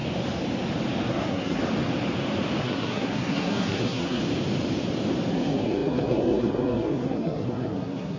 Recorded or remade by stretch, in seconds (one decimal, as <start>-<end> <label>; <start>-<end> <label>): 0.0-1.1 recorded; 1.1-1.6 remade; 1.6-2.6 recorded; 2.6-4.2 remade; 4.2-5.3 recorded; 5.3-8.2 remade